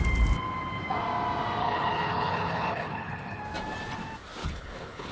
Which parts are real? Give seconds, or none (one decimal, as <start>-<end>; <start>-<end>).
0.0-1.6; 3.4-4.4